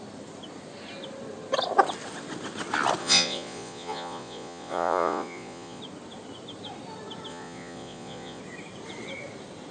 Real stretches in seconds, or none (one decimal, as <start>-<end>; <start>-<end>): 0.0-3.0; 5.8-7.3; 8.4-9.7